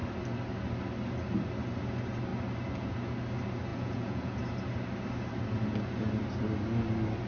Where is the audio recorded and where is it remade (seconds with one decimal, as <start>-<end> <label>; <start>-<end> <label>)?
0.0-3.7 recorded; 3.7-4.4 remade; 4.4-7.3 recorded